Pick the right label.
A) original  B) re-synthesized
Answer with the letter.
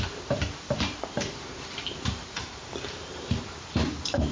B